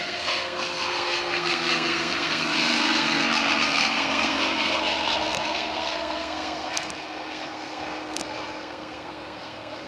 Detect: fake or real fake